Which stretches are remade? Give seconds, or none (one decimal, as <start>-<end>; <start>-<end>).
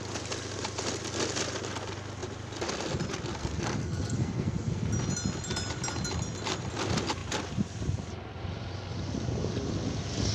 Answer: 3.4-4.9